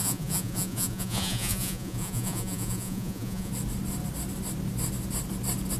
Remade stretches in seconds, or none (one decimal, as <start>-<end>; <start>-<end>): 0.0-3.5